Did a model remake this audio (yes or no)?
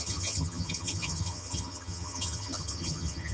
yes